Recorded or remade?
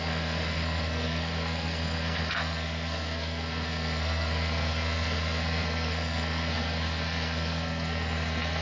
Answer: remade